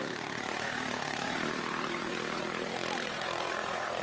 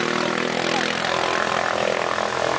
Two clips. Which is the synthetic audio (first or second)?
first